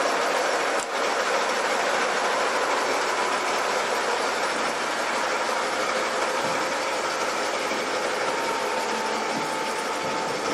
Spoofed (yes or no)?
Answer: no